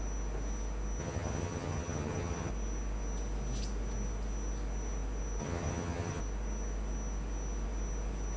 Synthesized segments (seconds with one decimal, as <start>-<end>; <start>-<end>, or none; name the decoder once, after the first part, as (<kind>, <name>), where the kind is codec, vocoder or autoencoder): 1.0-2.5 (vocoder, HiFi-GAN); 5.4-6.2

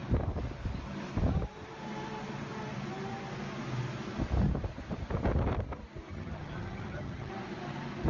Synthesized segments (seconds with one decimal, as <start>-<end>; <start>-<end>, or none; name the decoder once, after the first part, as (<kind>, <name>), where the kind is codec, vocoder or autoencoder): 6.1-7.3 (vocoder, HiFi-GAN)

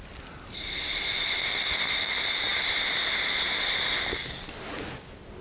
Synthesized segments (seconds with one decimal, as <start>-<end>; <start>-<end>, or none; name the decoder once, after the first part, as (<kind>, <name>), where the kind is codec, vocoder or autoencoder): none

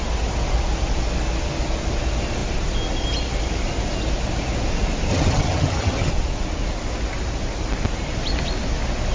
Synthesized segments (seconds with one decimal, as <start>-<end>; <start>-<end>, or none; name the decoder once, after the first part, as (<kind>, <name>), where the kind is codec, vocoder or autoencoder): 5.1-6.1 (vocoder, HiFi-GAN)

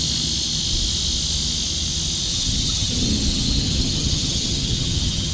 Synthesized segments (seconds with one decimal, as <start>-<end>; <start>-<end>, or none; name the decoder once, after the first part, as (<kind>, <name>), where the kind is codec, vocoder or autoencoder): 2.3-5.3 (vocoder, HiFi-GAN)